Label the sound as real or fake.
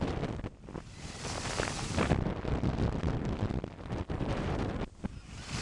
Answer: real